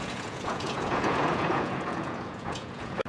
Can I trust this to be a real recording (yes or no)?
no